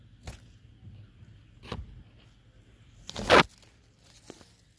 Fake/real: real